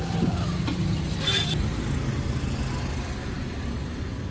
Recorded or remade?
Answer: recorded